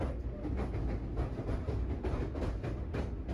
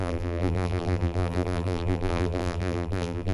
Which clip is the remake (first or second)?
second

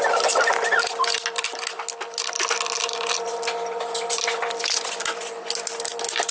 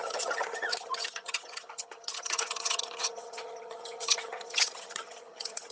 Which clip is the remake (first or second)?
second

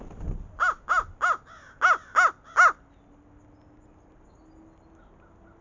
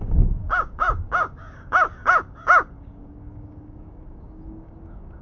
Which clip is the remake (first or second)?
second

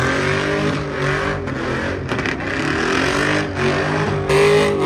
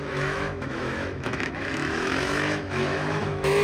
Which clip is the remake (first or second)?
second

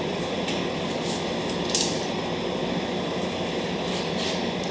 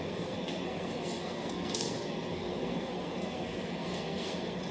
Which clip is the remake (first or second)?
second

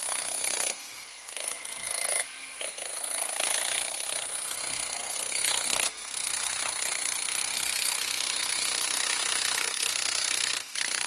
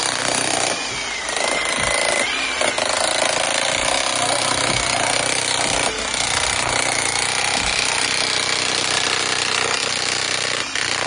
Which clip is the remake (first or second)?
first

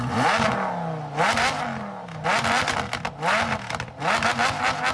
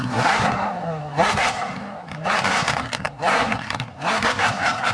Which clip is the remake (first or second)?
second